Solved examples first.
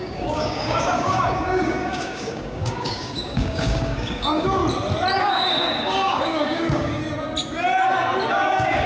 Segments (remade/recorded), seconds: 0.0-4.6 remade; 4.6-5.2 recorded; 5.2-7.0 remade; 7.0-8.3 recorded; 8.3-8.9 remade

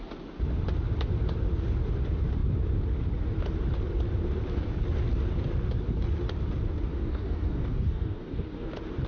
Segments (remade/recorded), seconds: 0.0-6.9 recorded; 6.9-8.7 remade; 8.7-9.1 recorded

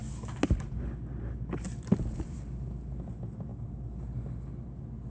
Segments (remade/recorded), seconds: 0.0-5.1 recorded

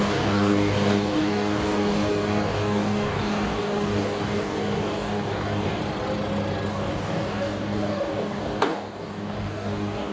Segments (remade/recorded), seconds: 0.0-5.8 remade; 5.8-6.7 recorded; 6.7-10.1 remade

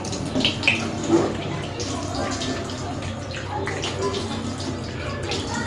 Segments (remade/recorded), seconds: 0.0-1.0 recorded; 1.0-1.8 remade; 1.8-5.7 recorded

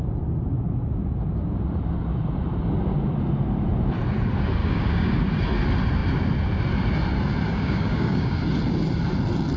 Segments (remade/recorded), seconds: 0.0-4.6 recorded; 4.6-5.2 remade; 5.2-7.5 recorded; 7.5-8.4 remade; 8.4-9.6 recorded